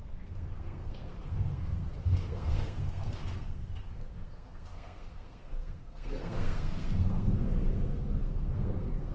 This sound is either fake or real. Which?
fake